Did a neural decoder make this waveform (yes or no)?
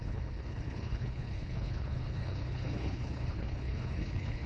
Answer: yes